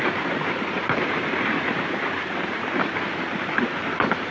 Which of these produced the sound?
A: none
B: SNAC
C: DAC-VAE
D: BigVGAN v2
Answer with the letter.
D